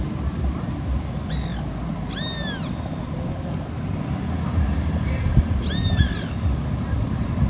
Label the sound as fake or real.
real